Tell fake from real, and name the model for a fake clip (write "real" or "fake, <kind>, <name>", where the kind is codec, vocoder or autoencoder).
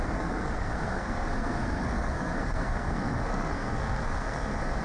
fake, codec, SNAC